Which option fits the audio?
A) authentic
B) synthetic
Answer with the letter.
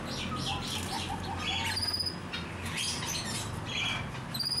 A